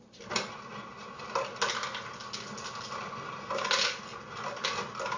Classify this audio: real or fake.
real